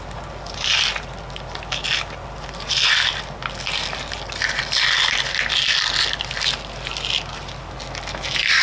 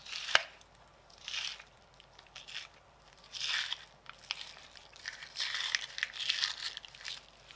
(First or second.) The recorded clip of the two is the first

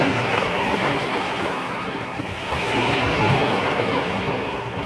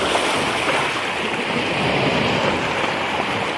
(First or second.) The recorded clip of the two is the second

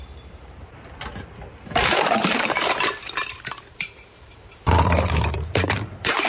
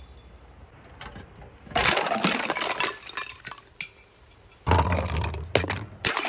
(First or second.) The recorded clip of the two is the second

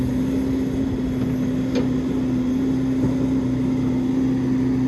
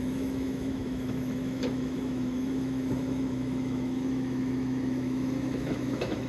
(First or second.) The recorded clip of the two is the first